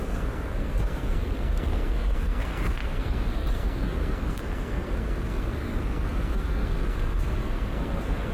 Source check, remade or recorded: remade